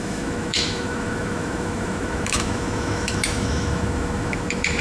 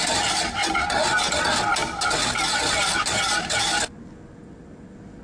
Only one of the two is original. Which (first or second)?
second